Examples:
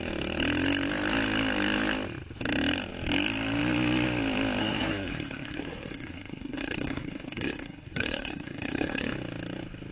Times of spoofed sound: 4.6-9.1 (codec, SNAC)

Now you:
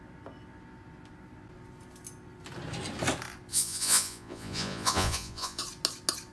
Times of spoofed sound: 3.5-5.6 (vocoder, Vocos)